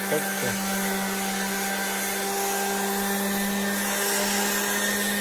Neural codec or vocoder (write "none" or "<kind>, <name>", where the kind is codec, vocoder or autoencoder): none